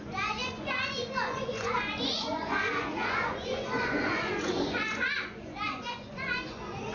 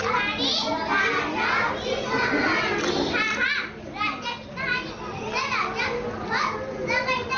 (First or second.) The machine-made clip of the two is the first